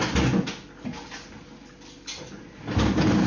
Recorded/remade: recorded